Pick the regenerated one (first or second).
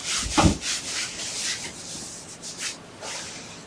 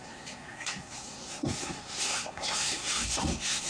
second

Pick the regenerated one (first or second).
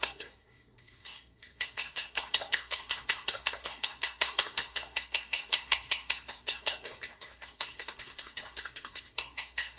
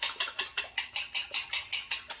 first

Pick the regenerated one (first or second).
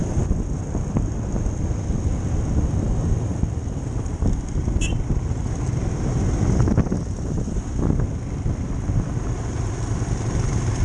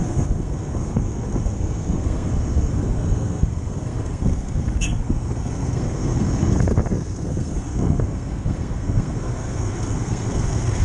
second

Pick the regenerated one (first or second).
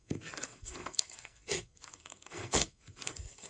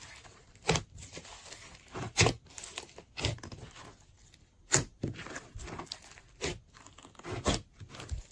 first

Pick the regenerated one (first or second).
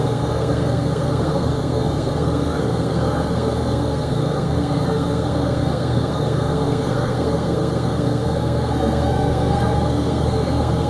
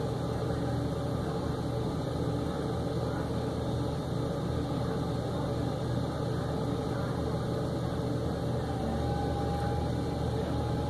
first